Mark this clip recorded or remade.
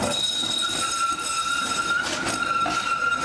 recorded